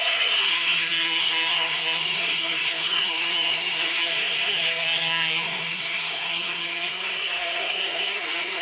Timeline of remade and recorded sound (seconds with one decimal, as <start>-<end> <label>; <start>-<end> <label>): 0.0-8.6 remade